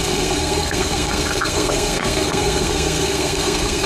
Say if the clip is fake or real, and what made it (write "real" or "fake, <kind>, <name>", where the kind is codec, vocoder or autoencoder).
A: fake, codec, SNAC